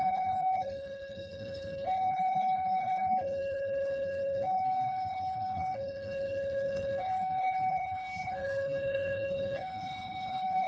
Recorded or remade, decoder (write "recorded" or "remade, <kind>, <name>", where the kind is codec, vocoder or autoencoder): remade, codec, HILCodec